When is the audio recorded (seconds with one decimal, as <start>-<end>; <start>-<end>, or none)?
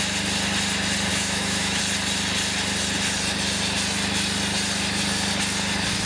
0.0-1.1; 1.8-6.1